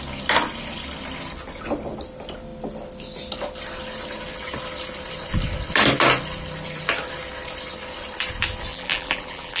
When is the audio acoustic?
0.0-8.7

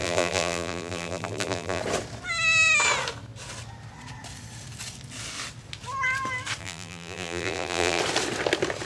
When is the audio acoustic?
1.8-6.6; 8.0-8.9